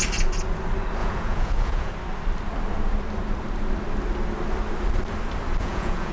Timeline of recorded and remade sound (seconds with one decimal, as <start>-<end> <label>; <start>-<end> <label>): 0.0-1.0 recorded; 1.0-1.9 remade; 1.9-5.6 recorded; 5.6-6.1 remade